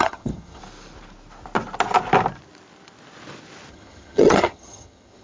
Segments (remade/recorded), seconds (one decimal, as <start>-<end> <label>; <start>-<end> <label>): 0.0-0.6 remade; 0.6-3.7 recorded; 3.7-5.2 remade